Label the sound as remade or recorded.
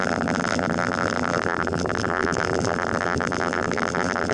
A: remade